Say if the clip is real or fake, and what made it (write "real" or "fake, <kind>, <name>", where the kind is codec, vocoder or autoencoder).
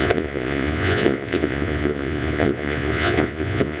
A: fake, vocoder, Vocos